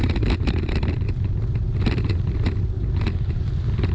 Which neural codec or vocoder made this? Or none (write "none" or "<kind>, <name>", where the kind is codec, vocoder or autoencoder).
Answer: none